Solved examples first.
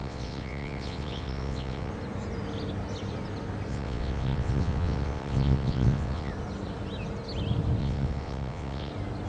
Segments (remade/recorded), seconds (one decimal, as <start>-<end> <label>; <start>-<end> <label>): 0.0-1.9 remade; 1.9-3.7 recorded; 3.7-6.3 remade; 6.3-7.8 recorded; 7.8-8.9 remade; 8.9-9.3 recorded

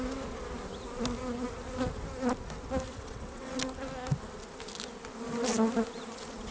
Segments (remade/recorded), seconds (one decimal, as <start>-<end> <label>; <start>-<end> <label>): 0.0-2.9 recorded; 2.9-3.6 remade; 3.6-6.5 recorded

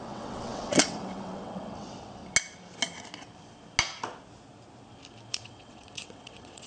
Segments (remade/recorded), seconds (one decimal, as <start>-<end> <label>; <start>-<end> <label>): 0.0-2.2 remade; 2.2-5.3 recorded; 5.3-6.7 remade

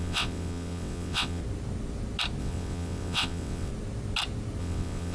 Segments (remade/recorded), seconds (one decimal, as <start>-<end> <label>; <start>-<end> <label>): 0.0-1.4 remade; 1.4-2.4 recorded; 2.4-3.7 remade; 3.7-4.6 recorded; 4.6-5.1 remade

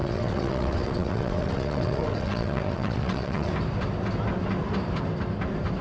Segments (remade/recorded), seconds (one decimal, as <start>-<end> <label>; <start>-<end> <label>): 0.0-3.5 remade; 3.5-5.8 recorded